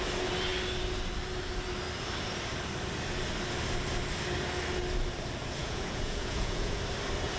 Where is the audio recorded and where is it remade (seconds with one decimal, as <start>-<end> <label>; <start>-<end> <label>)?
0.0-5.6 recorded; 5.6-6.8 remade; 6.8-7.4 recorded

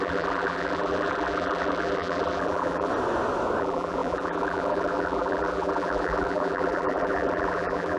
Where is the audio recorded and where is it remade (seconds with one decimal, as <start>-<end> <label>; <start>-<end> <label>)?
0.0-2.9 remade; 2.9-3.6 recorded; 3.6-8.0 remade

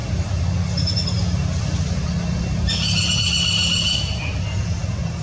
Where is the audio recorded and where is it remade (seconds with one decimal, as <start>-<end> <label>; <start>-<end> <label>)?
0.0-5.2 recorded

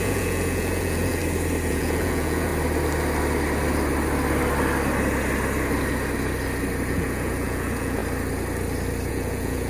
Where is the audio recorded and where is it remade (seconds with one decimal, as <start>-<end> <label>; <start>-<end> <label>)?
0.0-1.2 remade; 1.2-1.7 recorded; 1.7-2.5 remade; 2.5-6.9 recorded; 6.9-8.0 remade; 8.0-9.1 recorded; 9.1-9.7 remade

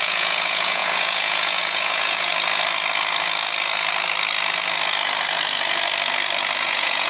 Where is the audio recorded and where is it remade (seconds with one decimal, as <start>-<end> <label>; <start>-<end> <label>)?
0.0-2.3 remade; 2.3-6.6 recorded; 6.6-7.1 remade

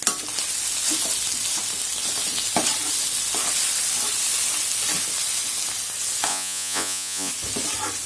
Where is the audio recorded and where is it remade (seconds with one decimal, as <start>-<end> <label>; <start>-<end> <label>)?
0.0-6.3 recorded; 6.3-7.3 remade; 7.3-8.1 recorded